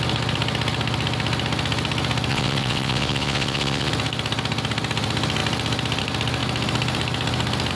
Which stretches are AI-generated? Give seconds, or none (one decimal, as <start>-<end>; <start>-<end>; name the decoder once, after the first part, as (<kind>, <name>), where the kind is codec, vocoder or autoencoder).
2.3-3.9 (vocoder, WaveNeXt)